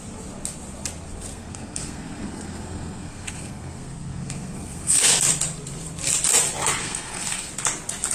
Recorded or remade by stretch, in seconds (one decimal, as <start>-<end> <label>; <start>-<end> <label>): 0.0-1.3 recorded; 1.3-5.2 remade; 5.2-6.8 recorded; 6.8-7.5 remade; 7.5-8.1 recorded